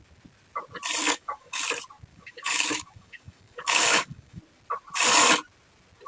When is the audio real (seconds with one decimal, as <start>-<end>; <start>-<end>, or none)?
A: 0.0-1.0; 1.6-2.1; 4.4-6.1